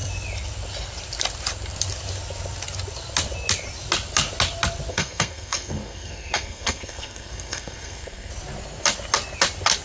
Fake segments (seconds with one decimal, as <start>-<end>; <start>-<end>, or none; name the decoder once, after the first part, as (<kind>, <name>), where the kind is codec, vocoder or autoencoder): 4.9-8.3 (codec, SNAC)